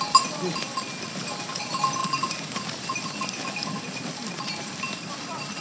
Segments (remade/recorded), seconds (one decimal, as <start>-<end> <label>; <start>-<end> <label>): 0.0-2.0 recorded; 2.0-5.1 remade; 5.1-5.6 recorded